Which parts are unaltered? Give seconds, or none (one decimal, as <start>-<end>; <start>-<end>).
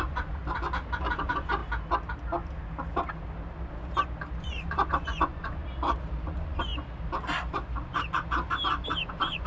0.4-1.1; 1.6-4.4; 5.6-6.2; 6.7-9.1